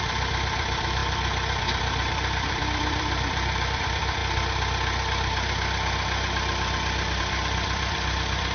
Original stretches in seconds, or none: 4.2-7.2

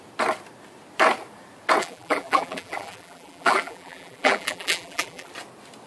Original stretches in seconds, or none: 0.0-1.8; 5.3-5.9

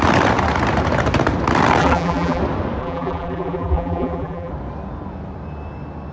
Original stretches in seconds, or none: 0.0-1.8; 2.4-2.8; 4.5-6.1